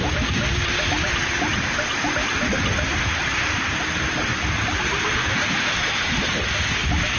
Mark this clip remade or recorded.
recorded